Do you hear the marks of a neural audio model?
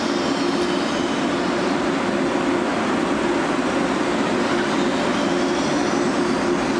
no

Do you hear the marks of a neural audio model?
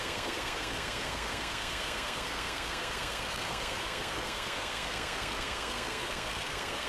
yes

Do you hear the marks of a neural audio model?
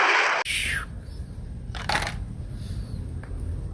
no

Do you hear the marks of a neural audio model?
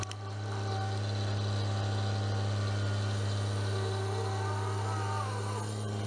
no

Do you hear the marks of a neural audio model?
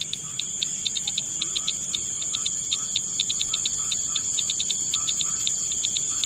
no